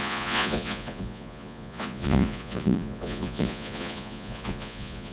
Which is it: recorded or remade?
remade